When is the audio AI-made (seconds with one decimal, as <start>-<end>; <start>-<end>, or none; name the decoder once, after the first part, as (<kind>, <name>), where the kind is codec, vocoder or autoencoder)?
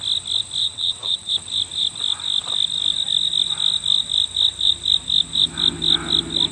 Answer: 0.6-1.3 (vocoder, WaveNeXt)